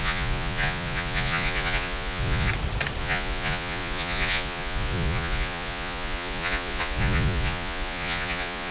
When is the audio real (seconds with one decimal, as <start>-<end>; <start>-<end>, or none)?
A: 2.5-3.0